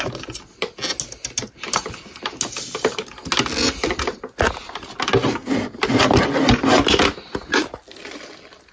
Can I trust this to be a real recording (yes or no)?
yes